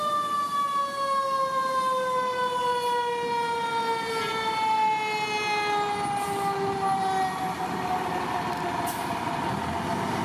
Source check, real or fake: real